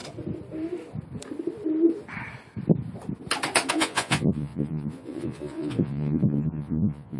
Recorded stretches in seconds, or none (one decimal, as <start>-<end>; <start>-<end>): 0.0-3.7